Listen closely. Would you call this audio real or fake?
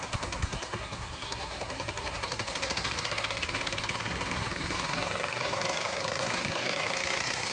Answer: fake